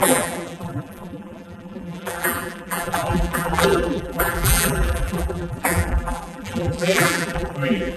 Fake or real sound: fake